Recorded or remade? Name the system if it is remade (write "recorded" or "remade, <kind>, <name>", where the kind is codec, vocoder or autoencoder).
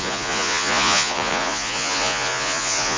remade, vocoder, Vocos